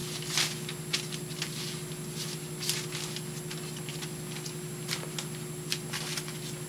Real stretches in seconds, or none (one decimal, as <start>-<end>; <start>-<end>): 0.0-6.7